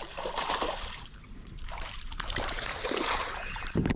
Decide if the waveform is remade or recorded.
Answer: remade